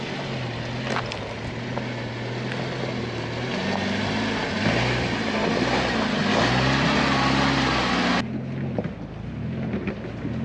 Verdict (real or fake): real